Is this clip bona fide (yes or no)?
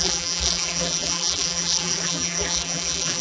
no